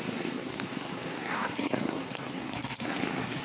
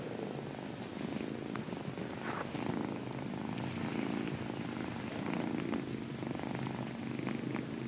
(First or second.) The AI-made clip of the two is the first